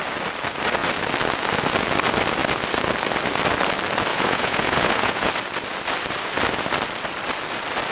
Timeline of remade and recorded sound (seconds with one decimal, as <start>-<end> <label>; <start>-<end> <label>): 0.0-4.1 recorded; 4.1-5.3 remade; 5.3-7.9 recorded